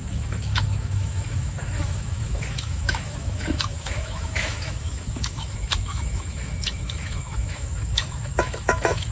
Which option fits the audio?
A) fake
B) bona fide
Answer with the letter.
A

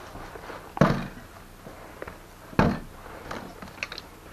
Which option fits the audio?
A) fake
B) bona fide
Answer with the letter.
B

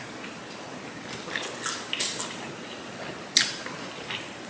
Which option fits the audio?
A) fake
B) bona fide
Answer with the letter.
B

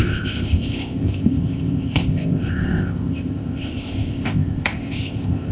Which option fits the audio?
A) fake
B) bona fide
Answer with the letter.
A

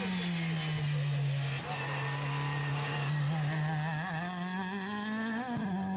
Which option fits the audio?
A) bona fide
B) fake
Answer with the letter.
A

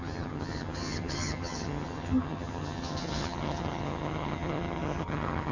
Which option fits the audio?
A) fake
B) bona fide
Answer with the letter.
A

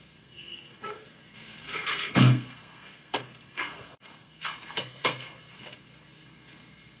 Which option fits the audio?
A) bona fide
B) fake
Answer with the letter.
B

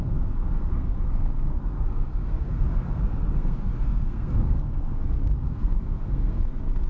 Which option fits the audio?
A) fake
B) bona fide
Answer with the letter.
A